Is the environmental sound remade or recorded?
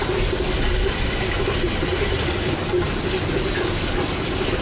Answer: recorded